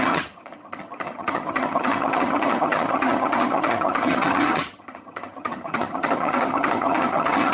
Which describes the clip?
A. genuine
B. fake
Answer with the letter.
B